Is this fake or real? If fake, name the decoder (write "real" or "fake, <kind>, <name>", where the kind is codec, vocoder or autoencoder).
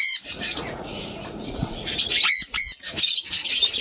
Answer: fake, vocoder, Vocos